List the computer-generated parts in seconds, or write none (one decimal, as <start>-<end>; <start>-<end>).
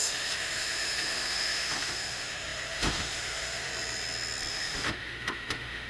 0.0-3.7; 4.5-5.9